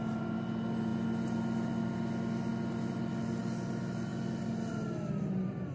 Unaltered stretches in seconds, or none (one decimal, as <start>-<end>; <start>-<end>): 0.0-5.7